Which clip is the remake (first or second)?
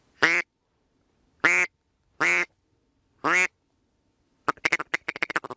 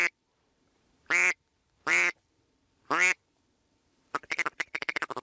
second